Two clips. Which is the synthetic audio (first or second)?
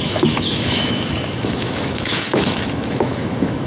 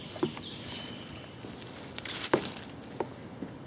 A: first